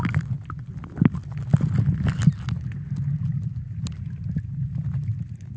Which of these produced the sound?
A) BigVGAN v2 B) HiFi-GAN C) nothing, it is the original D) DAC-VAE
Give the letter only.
C